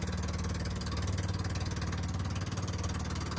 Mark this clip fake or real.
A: real